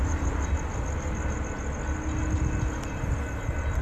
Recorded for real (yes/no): yes